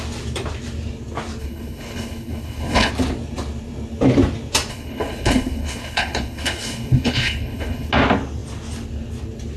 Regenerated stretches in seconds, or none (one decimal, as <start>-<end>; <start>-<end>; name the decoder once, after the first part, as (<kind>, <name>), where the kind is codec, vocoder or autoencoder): 1.4-2.9 (codec, HILCodec); 4.7-7.9